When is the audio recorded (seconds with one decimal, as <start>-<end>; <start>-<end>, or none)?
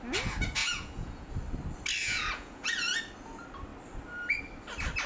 0.0-0.6; 1.3-2.0; 2.9-5.1